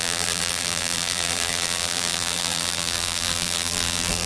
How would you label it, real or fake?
fake